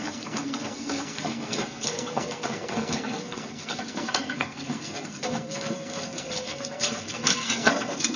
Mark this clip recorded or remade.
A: remade